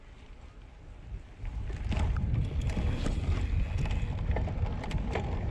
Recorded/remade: recorded